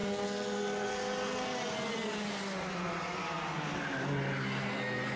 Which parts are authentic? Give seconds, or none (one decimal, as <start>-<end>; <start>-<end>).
0.0-5.2